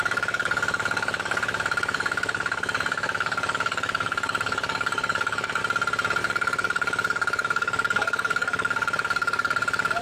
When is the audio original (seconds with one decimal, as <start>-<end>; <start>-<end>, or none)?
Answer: 5.6-6.2